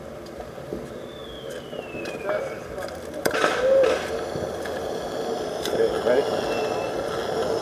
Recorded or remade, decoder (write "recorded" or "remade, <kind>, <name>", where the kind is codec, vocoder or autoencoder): recorded